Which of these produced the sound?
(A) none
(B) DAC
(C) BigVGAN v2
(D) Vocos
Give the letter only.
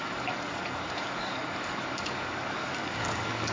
B